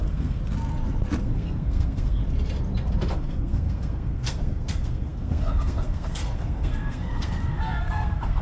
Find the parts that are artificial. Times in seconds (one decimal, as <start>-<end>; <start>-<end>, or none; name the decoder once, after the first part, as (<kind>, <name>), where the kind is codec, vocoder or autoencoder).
0.0-0.4 (codec, SNAC); 1.2-2.2; 3.1-8.4